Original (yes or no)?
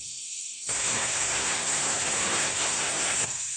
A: no